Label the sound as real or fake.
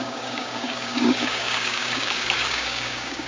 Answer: fake